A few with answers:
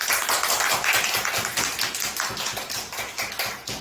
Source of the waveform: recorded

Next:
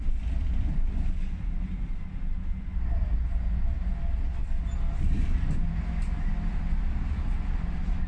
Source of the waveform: recorded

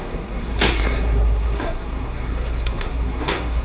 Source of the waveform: remade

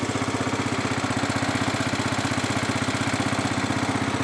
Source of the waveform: recorded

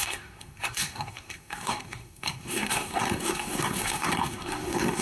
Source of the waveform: remade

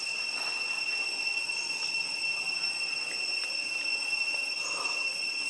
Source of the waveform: recorded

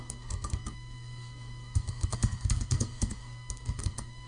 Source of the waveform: remade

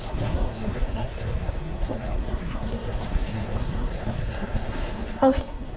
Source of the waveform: remade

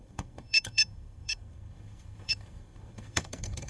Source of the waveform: remade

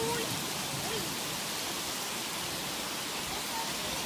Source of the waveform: recorded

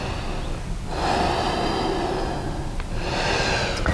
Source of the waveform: recorded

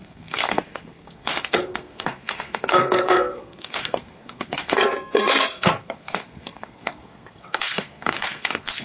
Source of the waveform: remade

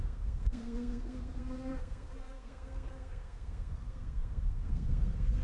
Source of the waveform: remade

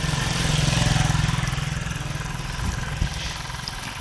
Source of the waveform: recorded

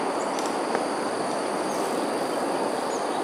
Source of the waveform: recorded